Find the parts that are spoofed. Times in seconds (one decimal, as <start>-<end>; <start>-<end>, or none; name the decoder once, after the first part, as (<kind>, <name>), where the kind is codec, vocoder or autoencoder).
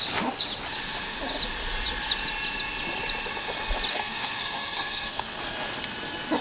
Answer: 3.9-5.4 (codec, SNAC)